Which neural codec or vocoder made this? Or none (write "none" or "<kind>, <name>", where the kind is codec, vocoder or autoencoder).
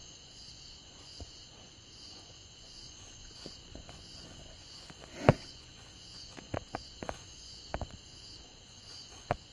vocoder, Vocos